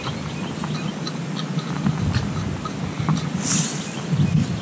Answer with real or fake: real